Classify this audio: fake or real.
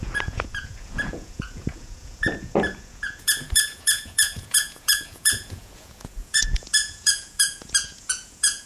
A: fake